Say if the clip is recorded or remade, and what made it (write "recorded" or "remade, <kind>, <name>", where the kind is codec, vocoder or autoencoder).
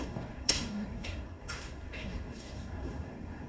remade, codec, SNAC